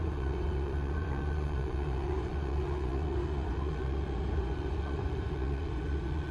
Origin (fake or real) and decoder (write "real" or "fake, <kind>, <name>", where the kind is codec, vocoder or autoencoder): fake, vocoder, Vocos